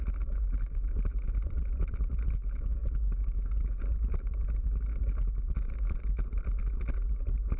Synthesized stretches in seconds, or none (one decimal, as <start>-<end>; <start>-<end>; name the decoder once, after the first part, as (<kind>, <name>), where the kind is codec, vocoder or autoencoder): 1.1-2.3 (vocoder, BigVGAN v2)